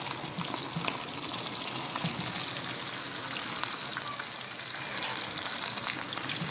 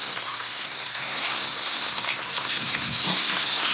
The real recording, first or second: first